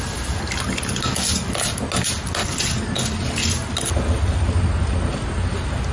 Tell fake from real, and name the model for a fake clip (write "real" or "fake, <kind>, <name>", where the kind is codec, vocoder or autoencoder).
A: real